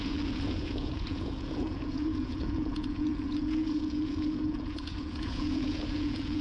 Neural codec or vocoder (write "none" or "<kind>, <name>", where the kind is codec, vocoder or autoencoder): vocoder, Vocos